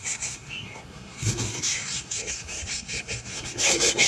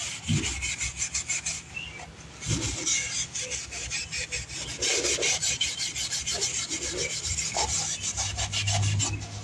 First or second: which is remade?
first